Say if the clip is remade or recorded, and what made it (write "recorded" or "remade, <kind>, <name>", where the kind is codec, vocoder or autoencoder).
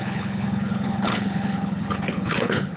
remade, codec, HILCodec